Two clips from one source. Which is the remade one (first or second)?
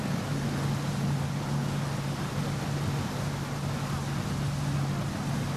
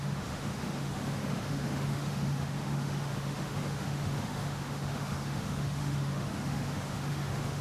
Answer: second